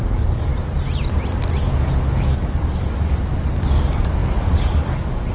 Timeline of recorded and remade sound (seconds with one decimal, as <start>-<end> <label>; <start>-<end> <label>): 0.0-0.5 remade; 0.5-1.6 recorded; 1.6-5.3 remade